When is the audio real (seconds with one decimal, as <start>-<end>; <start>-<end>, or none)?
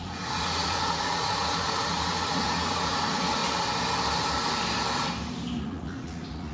3.4-5.6